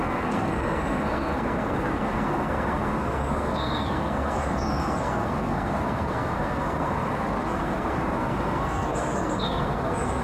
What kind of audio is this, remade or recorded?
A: remade